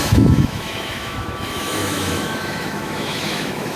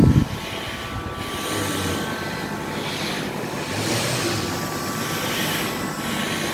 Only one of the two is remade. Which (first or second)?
first